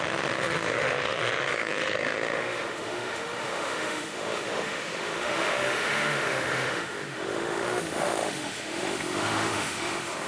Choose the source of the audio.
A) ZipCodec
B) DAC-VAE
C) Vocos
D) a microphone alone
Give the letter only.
B